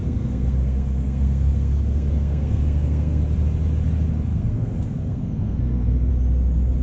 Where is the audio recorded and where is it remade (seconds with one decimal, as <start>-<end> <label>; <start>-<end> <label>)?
0.0-3.2 remade; 3.2-4.3 recorded; 4.3-6.1 remade; 6.1-6.8 recorded